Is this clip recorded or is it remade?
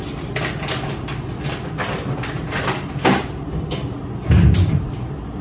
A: recorded